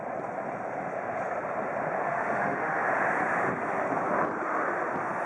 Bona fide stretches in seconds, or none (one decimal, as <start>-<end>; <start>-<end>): 0.0-2.0; 2.8-5.3